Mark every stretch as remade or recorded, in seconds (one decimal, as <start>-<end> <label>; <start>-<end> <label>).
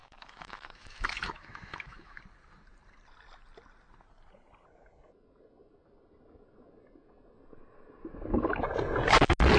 0.0-2.2 remade; 2.2-9.6 recorded